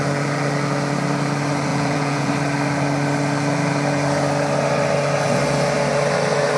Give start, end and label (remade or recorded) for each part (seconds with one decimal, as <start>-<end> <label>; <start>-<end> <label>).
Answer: 0.0-1.7 recorded; 1.7-2.3 remade; 2.3-6.6 recorded